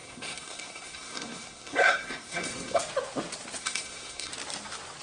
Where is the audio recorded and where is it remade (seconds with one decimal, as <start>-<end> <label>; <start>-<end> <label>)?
0.0-2.8 remade; 2.8-3.6 recorded; 3.6-4.3 remade; 4.3-5.0 recorded